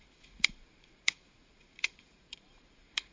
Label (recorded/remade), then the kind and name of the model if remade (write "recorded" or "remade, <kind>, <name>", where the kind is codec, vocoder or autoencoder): remade, vocoder, Vocos